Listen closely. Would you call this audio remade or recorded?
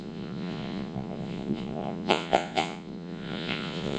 remade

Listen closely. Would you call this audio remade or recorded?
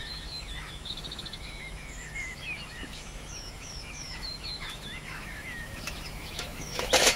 remade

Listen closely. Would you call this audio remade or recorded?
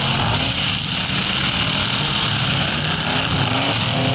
remade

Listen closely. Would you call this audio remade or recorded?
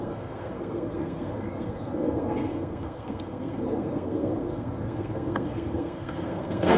remade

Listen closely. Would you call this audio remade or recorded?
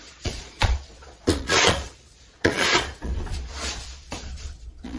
remade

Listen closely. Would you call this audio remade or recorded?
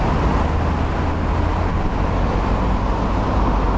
recorded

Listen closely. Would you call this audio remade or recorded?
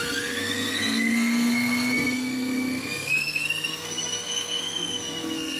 remade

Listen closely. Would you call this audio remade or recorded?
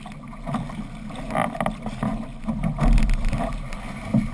recorded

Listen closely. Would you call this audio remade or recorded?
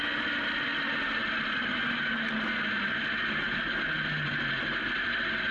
recorded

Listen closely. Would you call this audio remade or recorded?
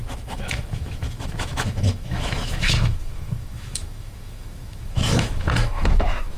remade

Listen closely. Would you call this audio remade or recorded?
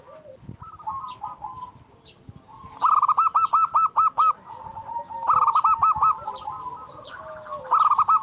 recorded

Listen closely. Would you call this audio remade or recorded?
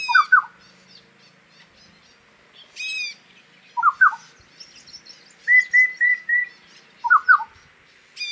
recorded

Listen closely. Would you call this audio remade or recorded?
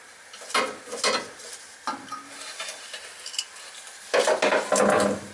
recorded